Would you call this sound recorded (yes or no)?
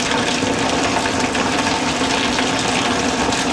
yes